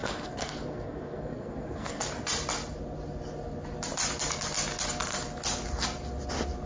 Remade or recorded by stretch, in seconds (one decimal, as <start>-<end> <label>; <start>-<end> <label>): 0.0-2.0 remade; 2.0-6.7 recorded